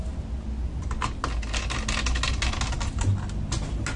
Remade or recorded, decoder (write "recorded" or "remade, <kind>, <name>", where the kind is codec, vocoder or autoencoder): recorded